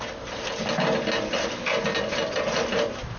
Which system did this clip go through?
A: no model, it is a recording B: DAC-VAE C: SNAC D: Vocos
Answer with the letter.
A